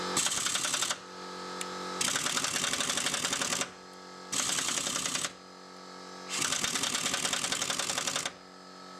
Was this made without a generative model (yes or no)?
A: yes